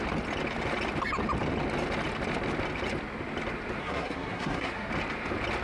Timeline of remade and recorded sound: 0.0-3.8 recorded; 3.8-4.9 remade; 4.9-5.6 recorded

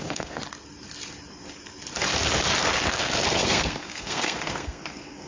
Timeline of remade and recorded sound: 0.0-0.4 remade; 0.4-2.9 recorded; 2.9-5.3 remade

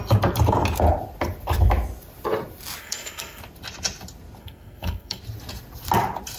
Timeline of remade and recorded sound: 0.0-2.8 recorded; 2.8-3.4 remade; 3.4-4.4 recorded; 4.4-5.2 remade; 5.2-6.4 recorded

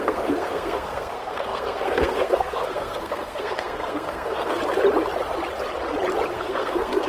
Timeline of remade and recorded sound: 0.0-4.6 remade; 4.6-6.3 recorded; 6.3-7.1 remade

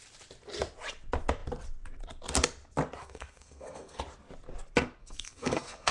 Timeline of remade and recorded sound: 0.0-3.0 recorded; 3.0-4.0 remade; 4.0-5.0 recorded; 5.0-5.9 remade

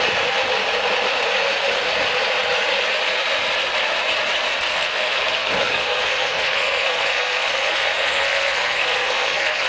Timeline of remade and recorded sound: 0.0-4.7 recorded; 4.7-9.7 remade

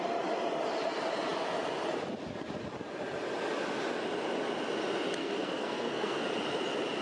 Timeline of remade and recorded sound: 0.0-5.2 recorded; 5.2-6.2 remade; 6.2-7.0 recorded